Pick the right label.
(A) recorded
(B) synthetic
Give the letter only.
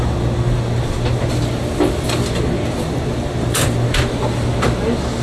A